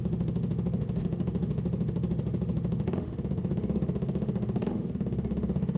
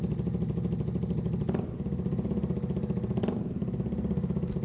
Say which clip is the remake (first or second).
first